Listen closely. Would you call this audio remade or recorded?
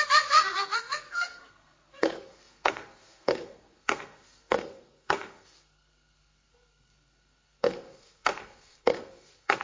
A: remade